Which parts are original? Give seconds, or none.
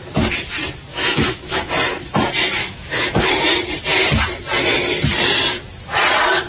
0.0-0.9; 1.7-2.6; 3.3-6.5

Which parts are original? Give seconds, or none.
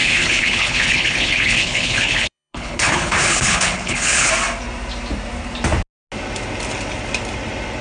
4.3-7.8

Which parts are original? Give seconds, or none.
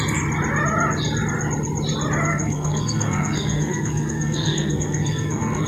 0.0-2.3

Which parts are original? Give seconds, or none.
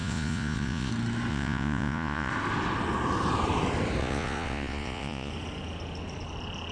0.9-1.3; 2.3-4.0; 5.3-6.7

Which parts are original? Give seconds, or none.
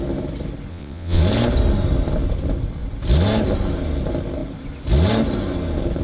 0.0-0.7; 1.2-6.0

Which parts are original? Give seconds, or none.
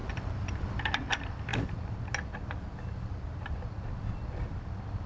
0.0-5.1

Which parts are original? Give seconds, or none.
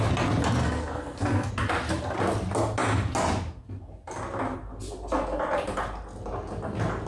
0.0-0.6; 1.5-7.1